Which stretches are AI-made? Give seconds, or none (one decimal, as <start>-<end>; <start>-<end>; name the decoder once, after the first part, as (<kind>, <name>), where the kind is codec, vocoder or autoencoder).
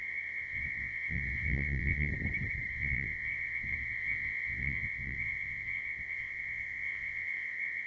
0.0-2.1 (vocoder, WaveNeXt); 2.7-7.9